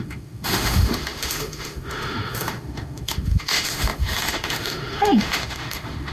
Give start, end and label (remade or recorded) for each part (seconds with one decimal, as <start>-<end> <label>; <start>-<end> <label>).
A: 0.0-6.1 remade